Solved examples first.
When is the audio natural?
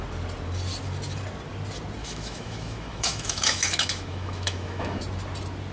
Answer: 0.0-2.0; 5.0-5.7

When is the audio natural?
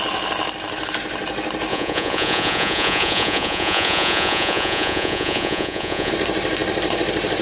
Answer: 0.0-1.7; 6.1-7.4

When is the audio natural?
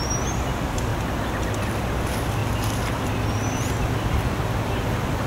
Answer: 0.0-0.9; 1.4-5.3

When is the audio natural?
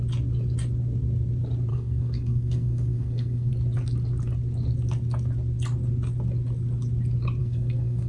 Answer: 0.0-1.7; 3.5-7.4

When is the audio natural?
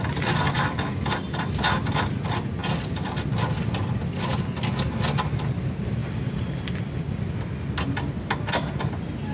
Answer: 0.0-2.6; 3.1-6.0; 6.5-9.3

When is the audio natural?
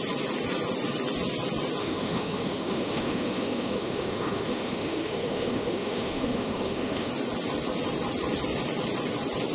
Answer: 0.0-1.8; 7.1-9.5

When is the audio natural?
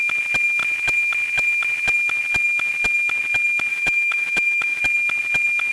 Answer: 0.0-3.7; 4.8-5.7